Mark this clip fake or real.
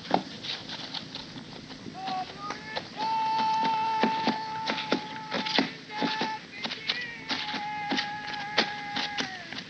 real